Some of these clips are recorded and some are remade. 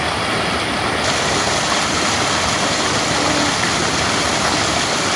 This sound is recorded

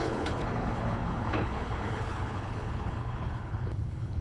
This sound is remade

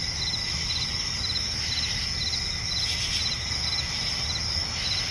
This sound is recorded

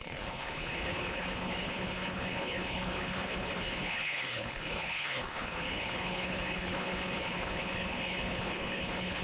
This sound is remade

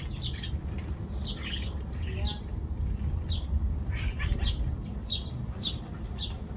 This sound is recorded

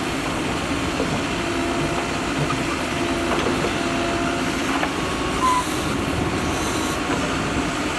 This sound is recorded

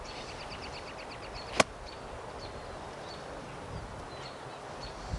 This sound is recorded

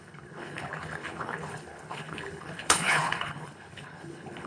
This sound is remade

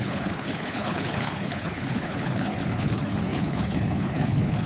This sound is remade